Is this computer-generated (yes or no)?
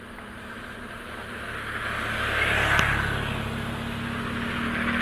no